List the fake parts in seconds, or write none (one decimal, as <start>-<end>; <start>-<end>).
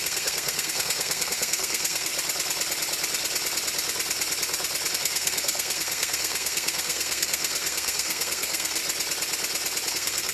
0.0-2.1; 4.9-8.8; 9.9-10.3